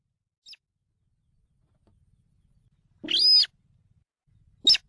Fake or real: real